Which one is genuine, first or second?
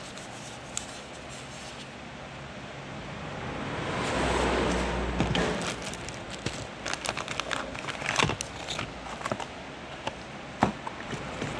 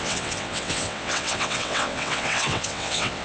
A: first